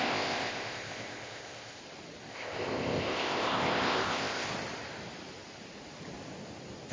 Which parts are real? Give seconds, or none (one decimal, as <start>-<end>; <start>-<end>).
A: 1.8-2.3; 4.5-6.9